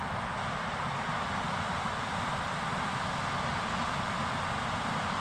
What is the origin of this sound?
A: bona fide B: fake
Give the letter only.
A